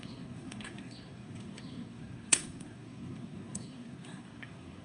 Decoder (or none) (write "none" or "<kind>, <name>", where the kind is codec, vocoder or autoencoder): codec, SNAC